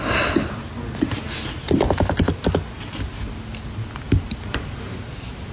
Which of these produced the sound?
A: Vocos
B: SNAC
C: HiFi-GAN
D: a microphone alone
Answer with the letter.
D